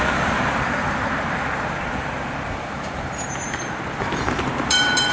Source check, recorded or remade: remade